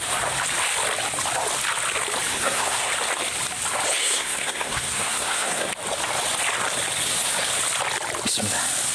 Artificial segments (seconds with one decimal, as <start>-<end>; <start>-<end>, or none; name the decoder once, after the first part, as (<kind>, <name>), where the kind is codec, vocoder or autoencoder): 2.3-2.9 (codec, SNAC); 4.0-5.7